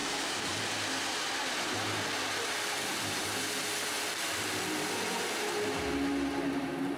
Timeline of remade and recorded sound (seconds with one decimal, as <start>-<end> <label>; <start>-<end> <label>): 0.0-0.6 remade; 0.6-7.0 recorded